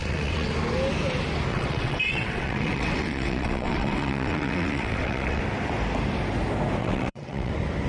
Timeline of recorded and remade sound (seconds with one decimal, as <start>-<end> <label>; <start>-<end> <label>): 0.0-0.5 remade; 0.5-1.5 recorded; 1.5-5.4 remade; 5.4-6.8 recorded; 6.8-7.5 remade; 7.5-7.9 recorded